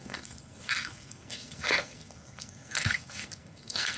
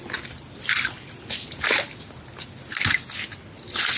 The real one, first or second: second